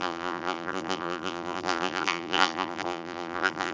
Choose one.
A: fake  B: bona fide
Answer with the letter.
A